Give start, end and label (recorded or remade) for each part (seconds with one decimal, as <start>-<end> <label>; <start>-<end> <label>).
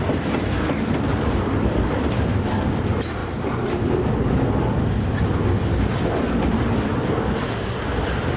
0.0-1.1 recorded; 1.1-2.3 remade; 2.3-3.2 recorded; 3.2-4.1 remade; 4.1-8.4 recorded